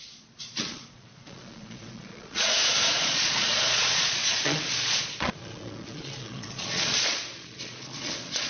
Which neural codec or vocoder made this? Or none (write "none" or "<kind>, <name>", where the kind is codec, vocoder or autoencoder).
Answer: vocoder, Vocos